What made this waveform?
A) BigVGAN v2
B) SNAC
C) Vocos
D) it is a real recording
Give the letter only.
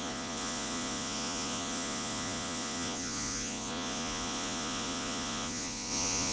C